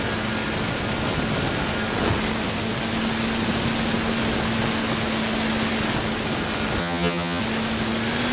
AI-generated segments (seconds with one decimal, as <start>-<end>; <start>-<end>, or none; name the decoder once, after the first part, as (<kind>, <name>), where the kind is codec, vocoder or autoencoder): 6.8-7.4 (vocoder, HiFi-GAN)